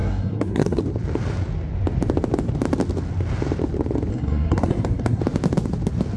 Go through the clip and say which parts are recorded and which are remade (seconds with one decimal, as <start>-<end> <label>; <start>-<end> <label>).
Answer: 0.0-0.8 remade; 0.8-4.1 recorded; 4.1-5.2 remade; 5.2-6.2 recorded